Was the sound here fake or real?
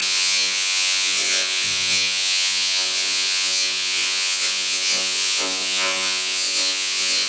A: fake